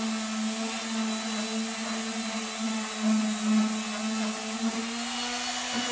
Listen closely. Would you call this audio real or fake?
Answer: real